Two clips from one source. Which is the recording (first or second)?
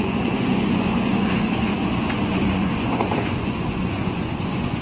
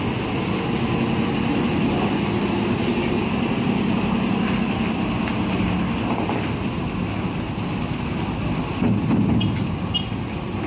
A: second